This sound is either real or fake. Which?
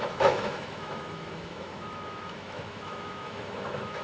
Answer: fake